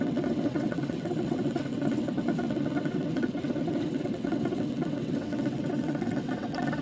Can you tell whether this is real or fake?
fake